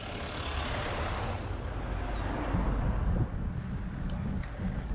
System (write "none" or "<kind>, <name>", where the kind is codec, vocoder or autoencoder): none